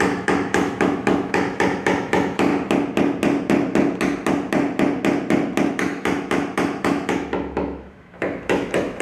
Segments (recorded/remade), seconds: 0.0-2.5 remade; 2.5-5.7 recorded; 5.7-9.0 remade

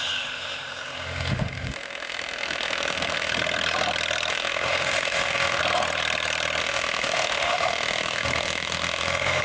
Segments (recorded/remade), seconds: 0.0-3.3 remade; 3.3-4.3 recorded; 4.3-5.6 remade; 5.6-6.6 recorded; 6.6-9.4 remade